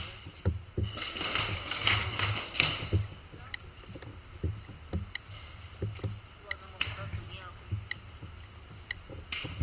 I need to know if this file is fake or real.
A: real